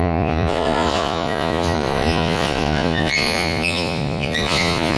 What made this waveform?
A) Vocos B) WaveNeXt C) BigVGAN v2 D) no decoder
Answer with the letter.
A